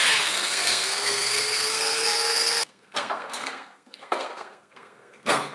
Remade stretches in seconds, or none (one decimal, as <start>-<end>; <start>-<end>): 0.0-5.5